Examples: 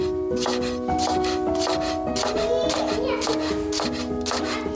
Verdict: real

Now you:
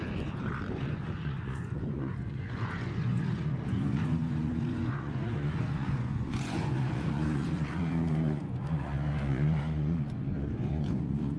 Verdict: fake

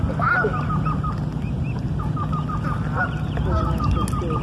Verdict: real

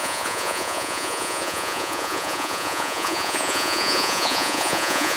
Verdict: fake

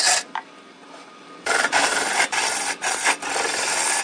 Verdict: real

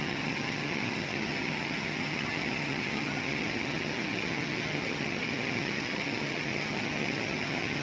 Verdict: fake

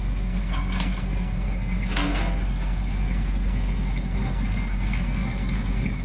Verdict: fake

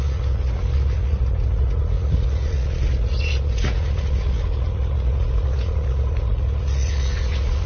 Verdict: fake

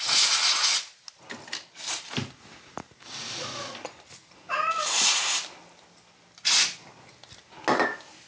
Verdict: real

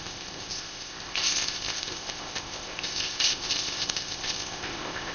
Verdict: fake